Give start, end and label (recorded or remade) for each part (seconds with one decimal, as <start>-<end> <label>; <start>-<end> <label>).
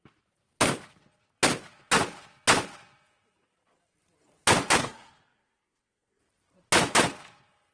0.0-4.8 recorded; 4.8-6.2 remade; 6.2-7.7 recorded